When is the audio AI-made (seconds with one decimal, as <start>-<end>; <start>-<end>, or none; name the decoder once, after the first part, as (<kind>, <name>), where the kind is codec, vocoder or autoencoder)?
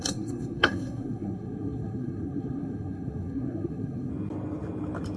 0.0-4.1 (codec, SNAC)